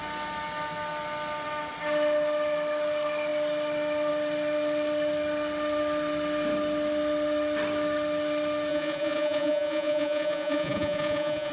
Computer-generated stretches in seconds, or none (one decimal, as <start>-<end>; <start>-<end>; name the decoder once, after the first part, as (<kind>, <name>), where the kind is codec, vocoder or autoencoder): 8.7-11.5 (vocoder, Vocos)